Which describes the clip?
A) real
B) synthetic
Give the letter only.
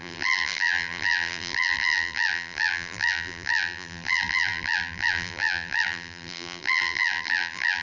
B